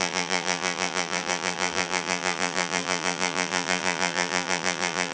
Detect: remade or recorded remade